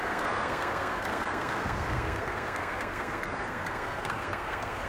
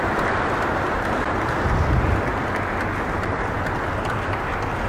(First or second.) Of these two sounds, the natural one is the second